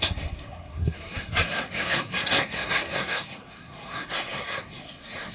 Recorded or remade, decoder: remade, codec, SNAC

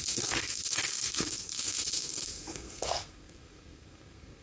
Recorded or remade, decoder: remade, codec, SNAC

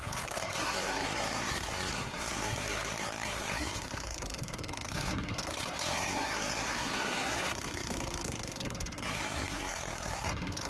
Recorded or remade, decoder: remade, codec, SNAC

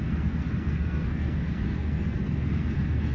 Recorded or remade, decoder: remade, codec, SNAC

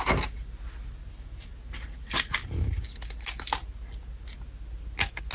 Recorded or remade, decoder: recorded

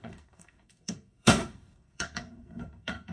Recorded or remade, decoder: remade, codec, SNAC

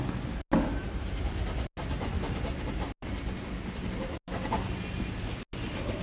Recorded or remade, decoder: recorded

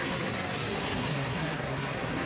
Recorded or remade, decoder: remade, codec, SNAC